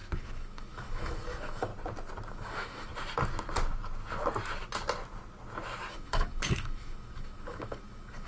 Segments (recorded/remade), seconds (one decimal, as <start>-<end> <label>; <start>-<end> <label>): 0.0-1.7 remade; 1.7-2.3 recorded; 2.3-2.9 remade; 2.9-5.9 recorded; 5.9-8.3 remade